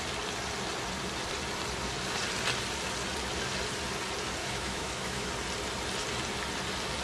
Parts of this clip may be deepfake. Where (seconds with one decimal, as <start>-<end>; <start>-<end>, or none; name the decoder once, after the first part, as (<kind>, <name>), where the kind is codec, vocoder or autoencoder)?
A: 4.4-5.3 (autoencoder, DAC-VAE)